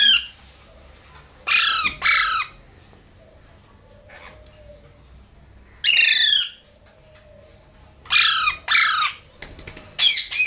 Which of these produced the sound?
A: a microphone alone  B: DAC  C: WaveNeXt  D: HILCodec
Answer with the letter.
A